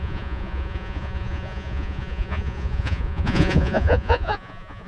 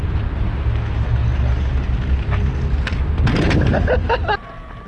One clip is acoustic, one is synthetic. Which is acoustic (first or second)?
second